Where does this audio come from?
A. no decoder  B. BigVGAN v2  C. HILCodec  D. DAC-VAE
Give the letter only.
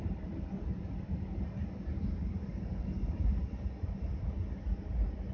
A